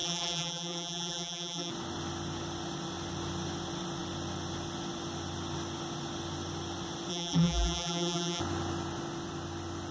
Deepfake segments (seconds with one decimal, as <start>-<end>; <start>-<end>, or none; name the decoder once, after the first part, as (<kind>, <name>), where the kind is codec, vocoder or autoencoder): 0.0-1.7 (vocoder, BigVGAN v2); 7.1-8.4